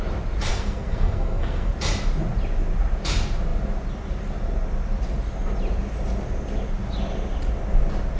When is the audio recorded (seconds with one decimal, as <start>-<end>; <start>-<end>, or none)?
0.0-0.5; 1.7-8.2